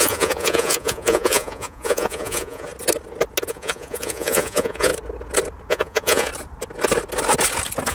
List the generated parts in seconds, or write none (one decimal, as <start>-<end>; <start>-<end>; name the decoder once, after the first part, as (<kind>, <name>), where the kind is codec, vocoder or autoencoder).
0.0-2.7 (vocoder, Vocos); 3.5-4.9; 5.7-6.3